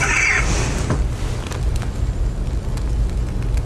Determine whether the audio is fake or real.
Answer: real